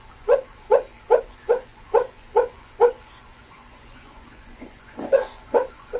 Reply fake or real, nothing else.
fake